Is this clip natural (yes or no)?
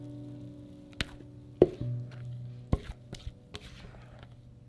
yes